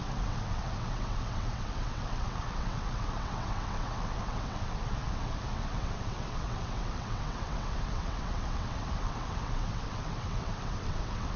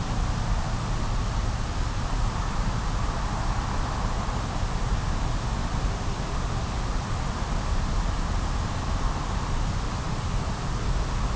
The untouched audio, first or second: second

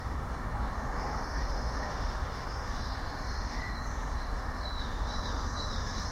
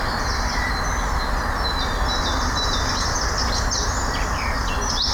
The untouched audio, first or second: second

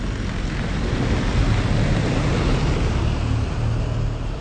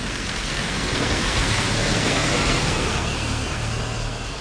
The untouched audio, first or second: first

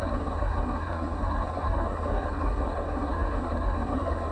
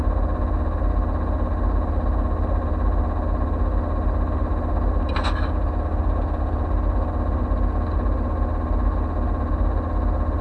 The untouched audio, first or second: second